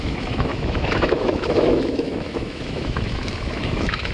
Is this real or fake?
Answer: fake